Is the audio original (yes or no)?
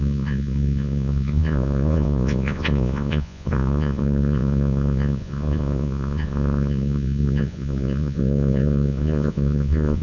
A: no